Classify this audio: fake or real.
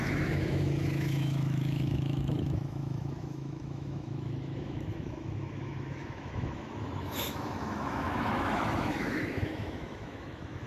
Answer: fake